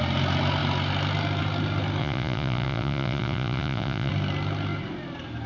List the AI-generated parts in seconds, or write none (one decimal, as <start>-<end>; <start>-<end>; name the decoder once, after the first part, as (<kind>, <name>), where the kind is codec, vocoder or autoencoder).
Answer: 2.0-4.1 (vocoder, Vocos)